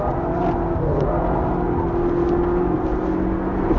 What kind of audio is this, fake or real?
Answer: real